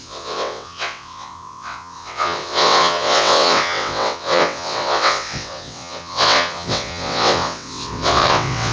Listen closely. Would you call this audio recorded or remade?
remade